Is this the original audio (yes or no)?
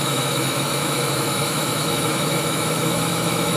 no